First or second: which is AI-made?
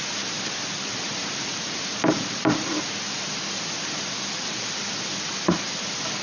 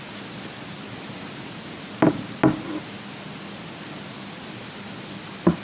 first